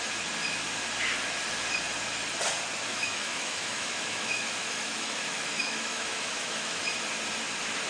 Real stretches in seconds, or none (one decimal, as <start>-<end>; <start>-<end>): 0.0-2.9; 6.8-7.9